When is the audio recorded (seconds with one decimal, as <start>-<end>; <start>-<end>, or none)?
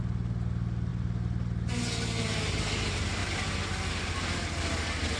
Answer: 0.0-5.2